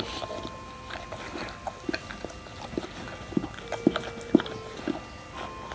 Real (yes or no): yes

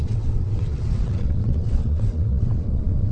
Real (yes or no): no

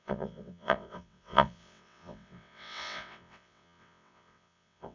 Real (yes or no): no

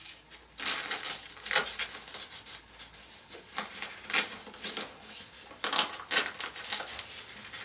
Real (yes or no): yes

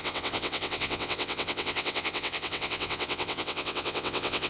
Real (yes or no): no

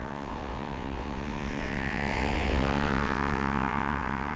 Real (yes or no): no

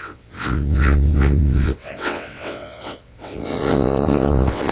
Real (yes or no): no